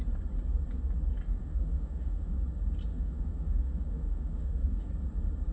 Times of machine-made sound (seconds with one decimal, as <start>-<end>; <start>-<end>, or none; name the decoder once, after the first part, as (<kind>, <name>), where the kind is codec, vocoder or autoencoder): 1.4-2.4 (autoencoder, DAC-VAE); 2.9-4.9